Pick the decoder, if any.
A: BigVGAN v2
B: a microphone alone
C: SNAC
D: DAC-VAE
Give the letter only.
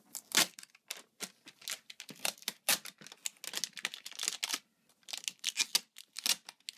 B